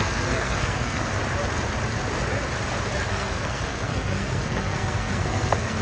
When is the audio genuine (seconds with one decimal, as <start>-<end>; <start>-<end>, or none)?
1.2-3.1